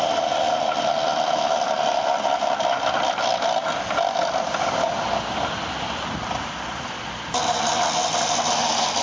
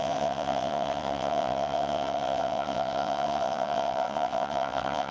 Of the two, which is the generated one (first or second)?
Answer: second